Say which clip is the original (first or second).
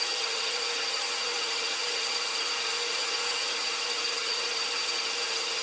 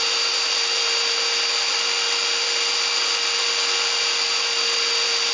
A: second